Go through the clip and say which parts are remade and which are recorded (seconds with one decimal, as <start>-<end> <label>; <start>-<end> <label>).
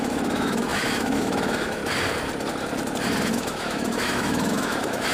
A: 0.0-1.8 remade; 1.8-3.3 recorded; 3.3-5.1 remade